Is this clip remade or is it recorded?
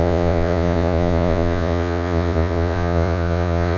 remade